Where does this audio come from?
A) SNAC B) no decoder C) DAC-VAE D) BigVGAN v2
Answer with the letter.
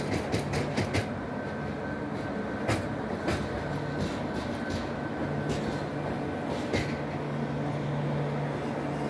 B